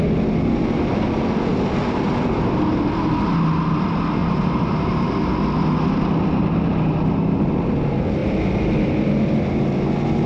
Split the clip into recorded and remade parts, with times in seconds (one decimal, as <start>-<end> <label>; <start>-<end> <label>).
0.0-4.2 recorded; 4.2-5.1 remade; 5.1-10.3 recorded